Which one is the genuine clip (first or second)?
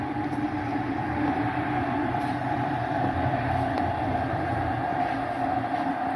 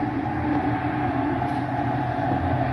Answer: second